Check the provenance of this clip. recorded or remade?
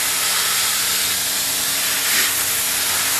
recorded